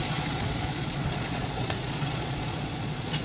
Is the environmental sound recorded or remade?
remade